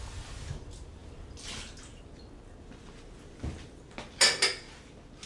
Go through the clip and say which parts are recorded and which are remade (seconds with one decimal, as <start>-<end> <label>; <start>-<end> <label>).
0.0-5.3 recorded